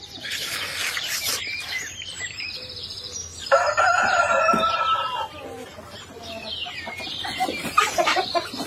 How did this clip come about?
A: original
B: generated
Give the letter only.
B